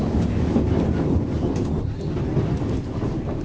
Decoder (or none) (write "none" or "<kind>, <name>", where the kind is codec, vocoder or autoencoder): none